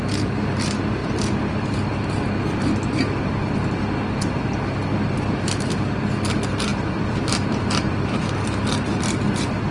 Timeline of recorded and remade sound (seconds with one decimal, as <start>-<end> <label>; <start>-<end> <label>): 0.0-1.0 recorded; 1.0-2.1 remade; 2.1-6.7 recorded; 6.7-9.7 remade